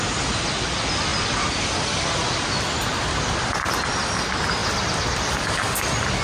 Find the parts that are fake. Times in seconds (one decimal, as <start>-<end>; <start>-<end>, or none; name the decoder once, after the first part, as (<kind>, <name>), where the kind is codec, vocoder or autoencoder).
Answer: 1.1-3.9 (vocoder, BigVGAN v2)